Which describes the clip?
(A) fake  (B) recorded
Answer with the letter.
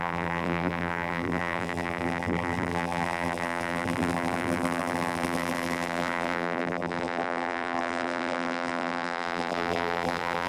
A